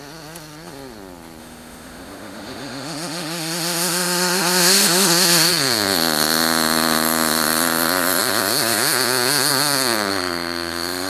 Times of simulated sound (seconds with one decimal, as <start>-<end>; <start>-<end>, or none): 1.4-5.5; 10.1-11.1